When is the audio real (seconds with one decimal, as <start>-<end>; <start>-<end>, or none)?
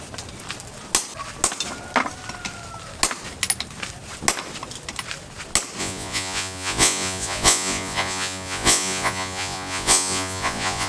0.0-5.8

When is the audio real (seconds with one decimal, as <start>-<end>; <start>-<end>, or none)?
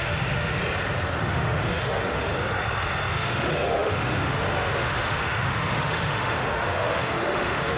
0.6-1.2; 2.3-3.1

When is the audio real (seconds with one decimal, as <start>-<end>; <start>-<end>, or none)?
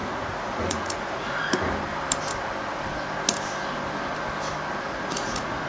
1.5-4.9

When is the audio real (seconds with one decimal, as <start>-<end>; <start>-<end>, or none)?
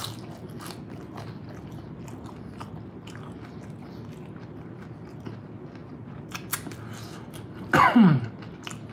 0.0-8.9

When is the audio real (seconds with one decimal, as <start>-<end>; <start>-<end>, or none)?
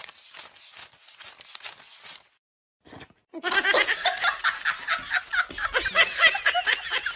0.0-7.2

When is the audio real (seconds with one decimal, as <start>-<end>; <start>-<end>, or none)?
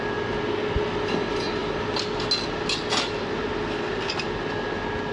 0.0-5.1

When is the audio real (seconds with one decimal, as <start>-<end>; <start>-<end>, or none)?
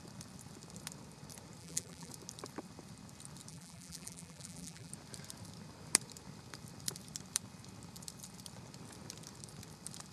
0.0-1.6; 2.1-3.5; 4.9-10.1